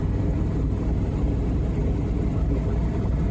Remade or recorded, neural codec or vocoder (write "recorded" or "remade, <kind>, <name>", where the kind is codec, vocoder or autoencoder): recorded